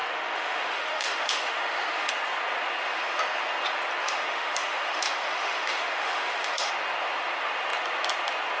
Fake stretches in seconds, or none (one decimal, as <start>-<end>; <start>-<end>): 0.0-2.1; 4.0-6.7